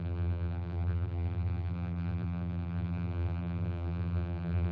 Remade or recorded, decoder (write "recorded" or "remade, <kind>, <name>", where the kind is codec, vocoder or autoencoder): remade, vocoder, BigVGAN v2